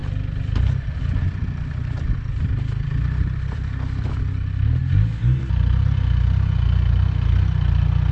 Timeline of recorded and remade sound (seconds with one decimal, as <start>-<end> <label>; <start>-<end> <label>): 0.0-4.2 remade; 4.2-8.1 recorded